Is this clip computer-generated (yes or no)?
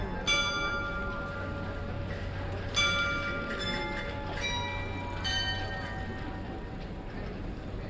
no